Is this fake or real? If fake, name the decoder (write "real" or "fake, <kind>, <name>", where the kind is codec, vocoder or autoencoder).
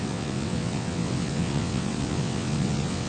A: fake, vocoder, WaveNeXt